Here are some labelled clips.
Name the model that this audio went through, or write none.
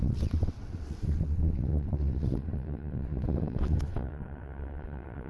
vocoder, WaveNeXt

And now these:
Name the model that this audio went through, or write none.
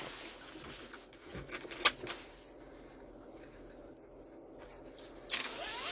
none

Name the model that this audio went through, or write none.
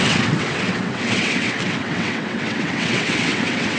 vocoder, WaveNeXt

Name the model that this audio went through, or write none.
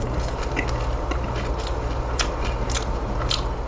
none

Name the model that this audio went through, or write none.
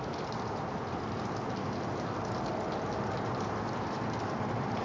none